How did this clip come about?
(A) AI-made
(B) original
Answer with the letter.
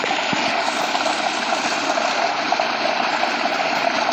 B